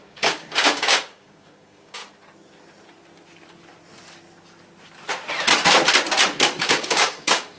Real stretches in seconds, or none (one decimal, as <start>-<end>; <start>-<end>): 2.0-6.6